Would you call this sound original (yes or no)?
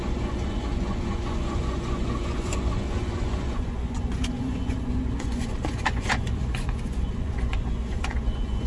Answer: no